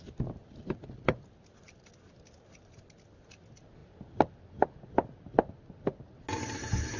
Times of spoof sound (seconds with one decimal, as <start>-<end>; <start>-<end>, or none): none